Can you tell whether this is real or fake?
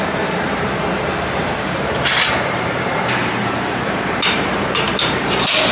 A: fake